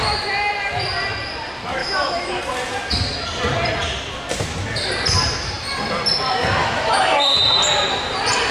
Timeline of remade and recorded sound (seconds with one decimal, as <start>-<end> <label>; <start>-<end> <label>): 0.0-1.8 recorded; 1.8-2.4 remade; 2.4-6.6 recorded; 6.6-7.4 remade; 7.4-8.5 recorded

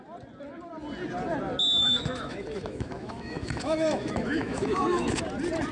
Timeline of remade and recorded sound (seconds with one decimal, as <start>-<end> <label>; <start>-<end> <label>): 0.0-1.8 recorded; 1.8-5.2 remade; 5.2-5.7 recorded

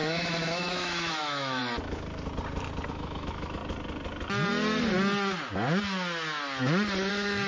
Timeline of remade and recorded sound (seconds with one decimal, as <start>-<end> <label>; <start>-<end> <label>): 0.0-1.6 remade; 1.6-2.9 recorded; 2.9-3.6 remade; 3.6-7.1 recorded; 7.1-7.5 remade